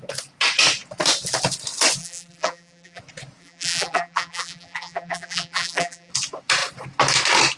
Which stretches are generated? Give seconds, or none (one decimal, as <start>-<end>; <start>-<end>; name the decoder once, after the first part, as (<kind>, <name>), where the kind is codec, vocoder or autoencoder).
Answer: 2.0-3.0 (vocoder, BigVGAN v2); 3.4-6.1